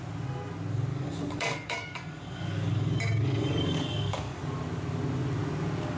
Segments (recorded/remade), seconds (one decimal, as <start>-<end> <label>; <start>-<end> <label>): 0.0-0.9 recorded; 0.9-4.4 remade; 4.4-6.0 recorded